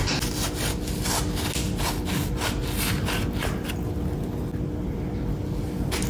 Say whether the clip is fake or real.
real